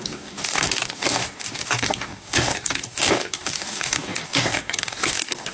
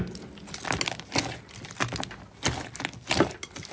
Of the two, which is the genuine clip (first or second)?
second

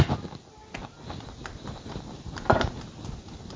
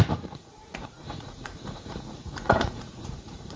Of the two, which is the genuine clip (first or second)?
first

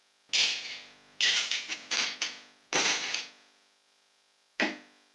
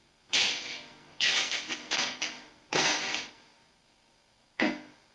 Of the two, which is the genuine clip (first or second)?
first